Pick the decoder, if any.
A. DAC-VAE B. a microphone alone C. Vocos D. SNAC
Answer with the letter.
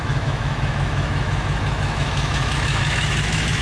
A